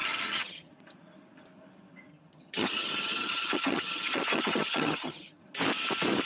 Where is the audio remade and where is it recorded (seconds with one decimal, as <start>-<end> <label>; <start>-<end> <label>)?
0.0-0.7 remade; 0.7-2.1 recorded; 2.1-5.4 remade; 5.4-6.3 recorded